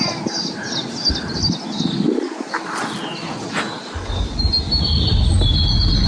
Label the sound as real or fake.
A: real